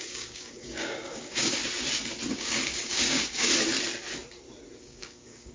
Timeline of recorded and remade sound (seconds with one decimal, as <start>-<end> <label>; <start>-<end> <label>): 0.0-1.6 remade; 1.6-2.3 recorded; 2.3-3.5 remade; 3.5-4.8 recorded; 4.8-5.5 remade